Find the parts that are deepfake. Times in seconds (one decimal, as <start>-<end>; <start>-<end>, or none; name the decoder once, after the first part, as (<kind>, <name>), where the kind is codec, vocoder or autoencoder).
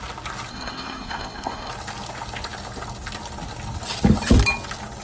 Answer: 0.5-1.7 (codec, SNAC)